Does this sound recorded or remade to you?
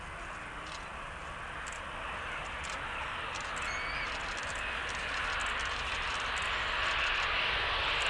recorded